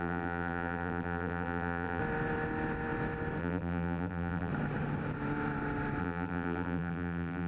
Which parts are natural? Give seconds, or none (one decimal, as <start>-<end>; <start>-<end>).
2.0-3.4; 4.5-6.0